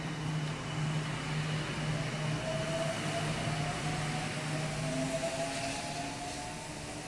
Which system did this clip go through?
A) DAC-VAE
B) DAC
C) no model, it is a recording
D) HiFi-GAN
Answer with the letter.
C